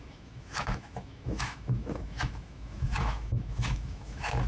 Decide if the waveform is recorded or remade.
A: remade